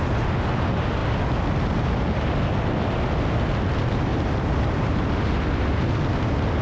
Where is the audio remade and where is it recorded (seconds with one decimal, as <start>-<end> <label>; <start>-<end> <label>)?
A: 0.0-4.1 recorded; 4.1-5.9 remade; 5.9-6.6 recorded

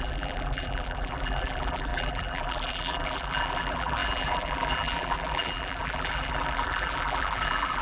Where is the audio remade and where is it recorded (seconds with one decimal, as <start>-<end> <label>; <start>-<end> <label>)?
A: 0.0-7.8 remade

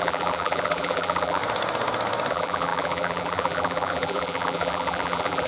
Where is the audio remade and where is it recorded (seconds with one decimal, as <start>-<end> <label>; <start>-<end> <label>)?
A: 0.0-1.4 remade; 1.4-2.3 recorded; 2.3-5.5 remade

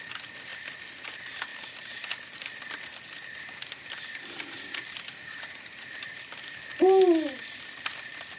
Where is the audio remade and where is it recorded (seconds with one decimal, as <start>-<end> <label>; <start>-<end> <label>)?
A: 0.0-8.4 recorded

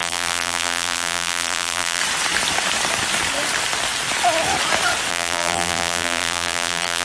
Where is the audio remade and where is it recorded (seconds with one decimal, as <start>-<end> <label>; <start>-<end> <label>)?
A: 0.0-2.0 remade; 2.0-5.1 recorded; 5.1-7.0 remade

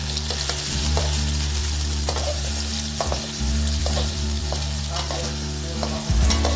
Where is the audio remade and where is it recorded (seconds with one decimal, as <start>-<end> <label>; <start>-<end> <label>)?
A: 0.0-1.0 remade; 1.0-1.6 recorded; 1.6-2.5 remade; 2.5-3.8 recorded; 3.8-4.8 remade; 4.8-6.6 recorded